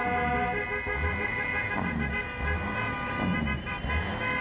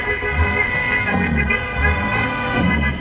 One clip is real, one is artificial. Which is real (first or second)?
first